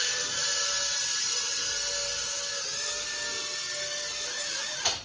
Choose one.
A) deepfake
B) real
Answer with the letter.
B